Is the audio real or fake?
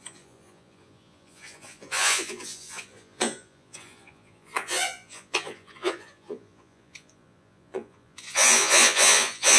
fake